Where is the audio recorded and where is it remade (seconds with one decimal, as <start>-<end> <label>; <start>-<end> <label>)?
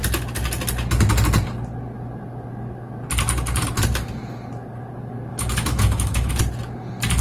0.0-5.3 recorded; 5.3-6.3 remade; 6.3-7.2 recorded